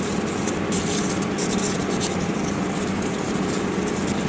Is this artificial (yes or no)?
no